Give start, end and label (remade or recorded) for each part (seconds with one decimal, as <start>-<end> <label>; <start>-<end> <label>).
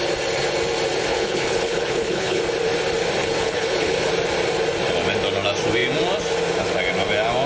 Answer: 0.0-1.1 recorded; 1.1-2.4 remade; 2.4-3.2 recorded; 3.2-4.1 remade; 4.1-7.5 recorded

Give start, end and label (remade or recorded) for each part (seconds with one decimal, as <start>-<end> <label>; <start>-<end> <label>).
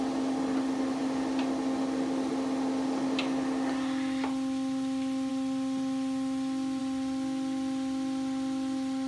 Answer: 0.0-9.1 recorded